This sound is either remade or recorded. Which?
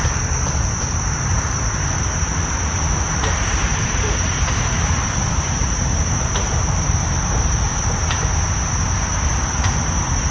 remade